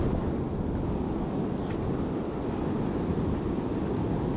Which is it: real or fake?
real